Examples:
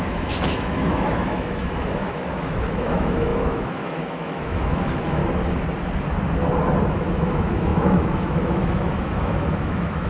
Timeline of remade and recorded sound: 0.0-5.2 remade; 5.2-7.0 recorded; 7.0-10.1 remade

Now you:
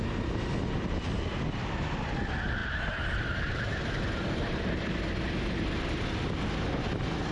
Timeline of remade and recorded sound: 0.0-2.6 recorded; 2.6-4.0 remade; 4.0-7.3 recorded

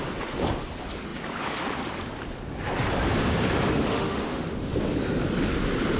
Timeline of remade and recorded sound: 0.0-3.7 recorded; 3.7-4.7 remade; 4.7-6.0 recorded

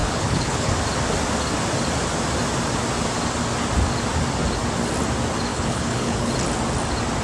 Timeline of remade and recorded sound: 0.0-0.7 remade; 0.7-5.5 recorded; 5.5-6.3 remade; 6.3-7.2 recorded

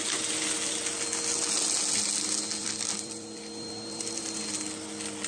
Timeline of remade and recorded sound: 0.0-2.6 recorded; 2.6-4.4 remade; 4.4-5.3 recorded

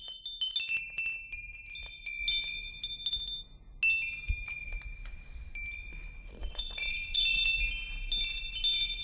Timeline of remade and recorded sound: 0.0-6.4 recorded; 6.4-7.3 remade; 7.3-9.0 recorded

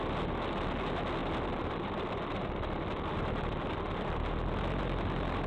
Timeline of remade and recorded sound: 0.0-1.2 recorded; 1.2-4.5 remade; 4.5-5.5 recorded

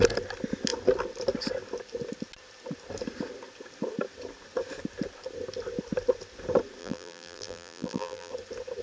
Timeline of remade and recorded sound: 0.0-6.8 recorded; 6.8-8.3 remade; 8.3-8.8 recorded